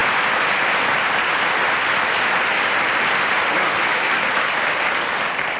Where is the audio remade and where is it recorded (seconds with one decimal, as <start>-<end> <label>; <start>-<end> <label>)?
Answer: 0.0-5.6 recorded